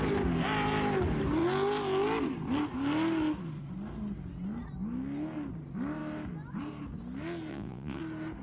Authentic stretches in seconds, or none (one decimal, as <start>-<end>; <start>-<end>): 0.0-7.5; 8.0-8.4